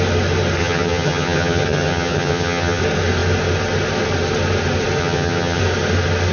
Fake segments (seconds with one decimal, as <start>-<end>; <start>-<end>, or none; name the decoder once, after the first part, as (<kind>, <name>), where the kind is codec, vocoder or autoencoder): 0.6-2.8 (vocoder, HiFi-GAN); 5.0-5.6